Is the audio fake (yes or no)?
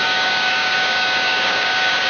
yes